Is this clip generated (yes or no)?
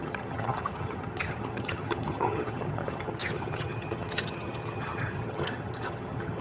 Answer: yes